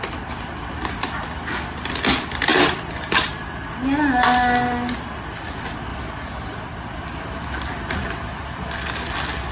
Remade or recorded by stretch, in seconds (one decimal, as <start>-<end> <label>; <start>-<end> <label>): 0.0-9.5 recorded